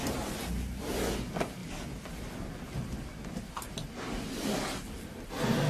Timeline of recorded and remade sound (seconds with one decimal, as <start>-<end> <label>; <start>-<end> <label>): 0.0-5.7 recorded